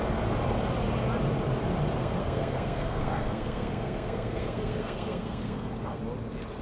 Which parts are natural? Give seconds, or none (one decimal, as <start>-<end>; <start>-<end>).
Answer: 0.0-2.0; 6.0-6.6